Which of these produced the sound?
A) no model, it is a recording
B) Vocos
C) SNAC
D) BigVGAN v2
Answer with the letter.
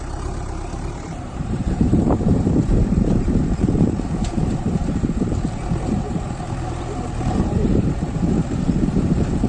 D